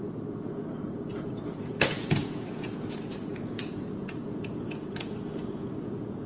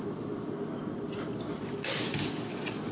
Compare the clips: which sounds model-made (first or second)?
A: first